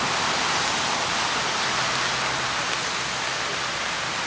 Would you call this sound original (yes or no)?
yes